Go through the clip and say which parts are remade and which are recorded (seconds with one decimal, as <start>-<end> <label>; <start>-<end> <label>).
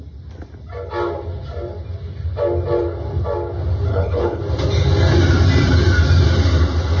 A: 0.0-3.9 recorded; 3.9-4.4 remade; 4.4-7.0 recorded